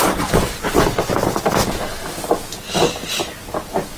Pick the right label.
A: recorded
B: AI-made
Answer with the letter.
A